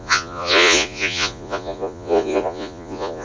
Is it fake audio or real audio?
fake